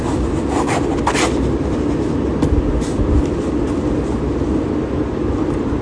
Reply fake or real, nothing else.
real